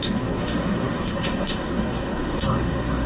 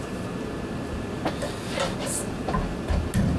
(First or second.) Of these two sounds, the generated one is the first